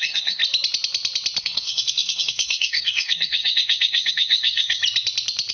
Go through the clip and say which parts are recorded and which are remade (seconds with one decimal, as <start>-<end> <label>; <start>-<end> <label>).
0.0-0.4 remade; 0.4-1.4 recorded; 1.4-4.8 remade; 4.8-5.5 recorded